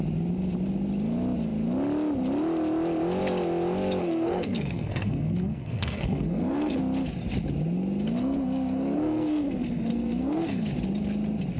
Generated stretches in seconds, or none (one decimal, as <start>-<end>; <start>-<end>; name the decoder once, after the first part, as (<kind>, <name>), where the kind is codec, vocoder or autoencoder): 4.0-6.8 (codec, SNAC); 8.2-10.7